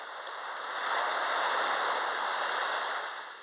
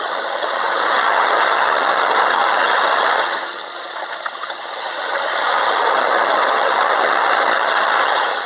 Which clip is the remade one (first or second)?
second